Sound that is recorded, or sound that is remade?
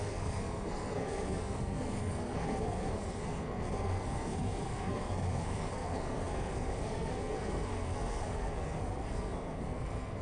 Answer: remade